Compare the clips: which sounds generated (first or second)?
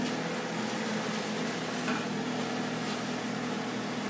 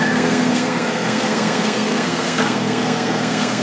second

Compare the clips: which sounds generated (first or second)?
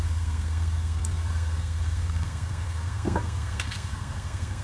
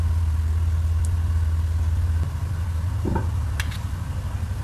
first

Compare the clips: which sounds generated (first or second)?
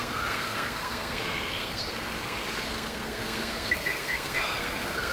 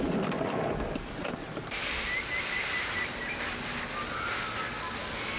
first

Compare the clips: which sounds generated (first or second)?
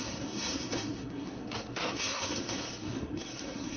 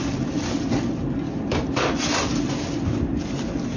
first